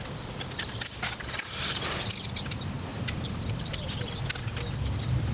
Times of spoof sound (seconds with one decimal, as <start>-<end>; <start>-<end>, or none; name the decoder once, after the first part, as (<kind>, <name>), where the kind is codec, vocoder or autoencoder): 2.9-4.2 (vocoder, BigVGAN v2)